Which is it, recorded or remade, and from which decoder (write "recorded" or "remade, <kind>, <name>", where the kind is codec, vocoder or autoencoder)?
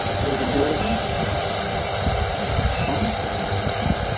remade, vocoder, BigVGAN v2